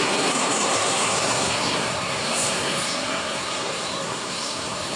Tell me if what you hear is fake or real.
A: fake